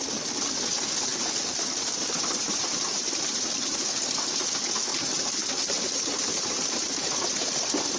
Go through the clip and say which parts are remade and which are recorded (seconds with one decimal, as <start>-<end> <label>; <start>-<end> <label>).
0.0-1.1 recorded; 1.1-3.9 remade; 3.9-4.9 recorded; 4.9-7.2 remade; 7.2-8.0 recorded